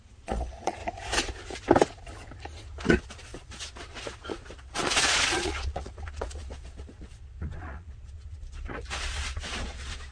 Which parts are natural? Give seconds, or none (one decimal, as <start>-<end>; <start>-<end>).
0.8-2.9